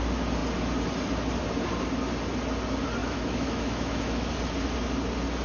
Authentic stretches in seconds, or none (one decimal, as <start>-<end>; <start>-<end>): 0.0-3.0; 4.3-5.4